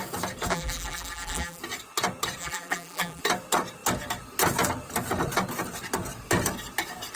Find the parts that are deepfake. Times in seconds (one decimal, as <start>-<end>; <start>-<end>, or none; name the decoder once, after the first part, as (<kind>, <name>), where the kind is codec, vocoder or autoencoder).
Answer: 0.5-1.6 (vocoder, BigVGAN v2); 2.4-3.2